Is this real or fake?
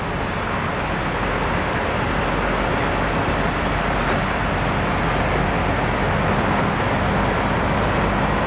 real